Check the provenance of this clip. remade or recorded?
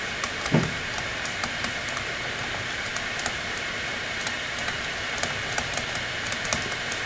remade